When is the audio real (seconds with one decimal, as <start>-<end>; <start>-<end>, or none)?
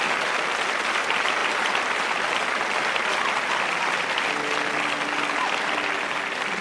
0.0-6.6